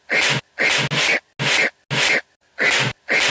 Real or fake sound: real